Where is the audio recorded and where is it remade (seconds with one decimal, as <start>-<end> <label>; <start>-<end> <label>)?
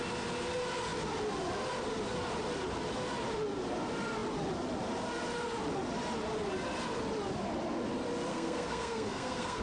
0.0-8.3 recorded; 8.3-9.6 remade